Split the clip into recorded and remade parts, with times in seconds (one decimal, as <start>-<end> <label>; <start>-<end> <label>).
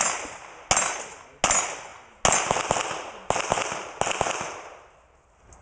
0.0-5.6 recorded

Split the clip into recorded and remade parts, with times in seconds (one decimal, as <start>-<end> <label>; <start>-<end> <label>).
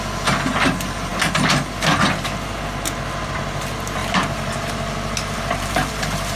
0.0-4.0 recorded; 4.0-6.4 remade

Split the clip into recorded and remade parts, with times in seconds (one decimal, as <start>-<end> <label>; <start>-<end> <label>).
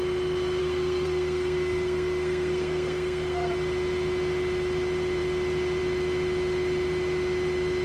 0.0-0.6 recorded; 0.6-3.5 remade; 3.5-7.8 recorded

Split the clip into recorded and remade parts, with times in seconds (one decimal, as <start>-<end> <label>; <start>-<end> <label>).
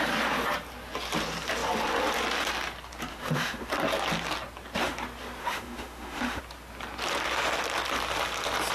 0.0-3.1 recorded; 3.1-3.7 remade; 3.7-5.4 recorded; 5.4-6.4 remade; 6.4-8.7 recorded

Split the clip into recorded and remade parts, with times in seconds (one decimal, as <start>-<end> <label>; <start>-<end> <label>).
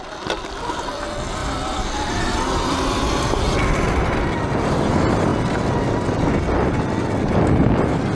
0.0-8.1 recorded